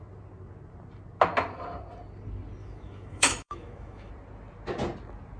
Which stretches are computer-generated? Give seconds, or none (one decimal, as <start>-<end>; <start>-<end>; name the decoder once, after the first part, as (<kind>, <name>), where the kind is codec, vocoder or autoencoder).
2.6-4.1 (autoencoder, DAC-VAE)